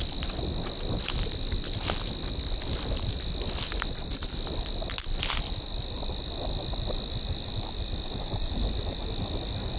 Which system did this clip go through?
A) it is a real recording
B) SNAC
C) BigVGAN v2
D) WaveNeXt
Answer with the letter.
A